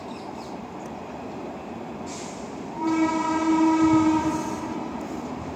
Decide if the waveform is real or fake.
real